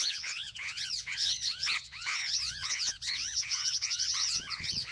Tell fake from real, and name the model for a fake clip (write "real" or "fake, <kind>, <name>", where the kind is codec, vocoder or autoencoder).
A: fake, vocoder, Vocos